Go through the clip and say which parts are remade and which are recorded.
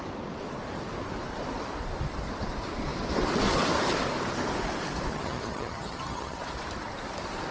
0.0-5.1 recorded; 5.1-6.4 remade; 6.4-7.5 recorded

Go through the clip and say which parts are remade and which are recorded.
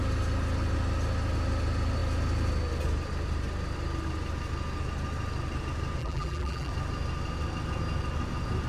0.0-6.0 recorded; 6.0-6.7 remade; 6.7-8.7 recorded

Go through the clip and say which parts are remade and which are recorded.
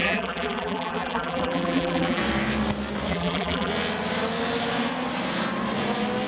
0.0-2.2 remade; 2.2-3.1 recorded; 3.1-3.7 remade; 3.7-6.3 recorded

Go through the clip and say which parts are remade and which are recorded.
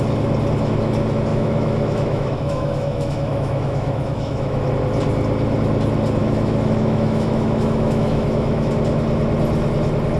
0.0-1.3 recorded; 1.3-4.7 remade; 4.7-6.2 recorded; 6.2-8.7 remade; 8.7-10.2 recorded